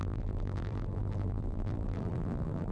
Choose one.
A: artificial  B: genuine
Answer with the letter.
A